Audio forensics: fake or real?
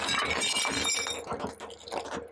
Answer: real